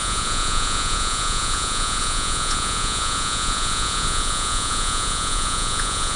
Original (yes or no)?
no